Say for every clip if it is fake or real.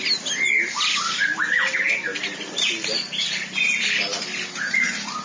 real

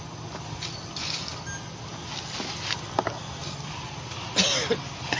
real